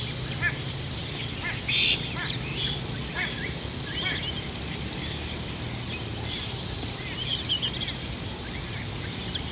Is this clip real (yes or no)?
yes